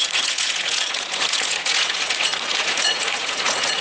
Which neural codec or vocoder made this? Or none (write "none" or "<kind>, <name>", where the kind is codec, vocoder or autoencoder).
vocoder, Vocos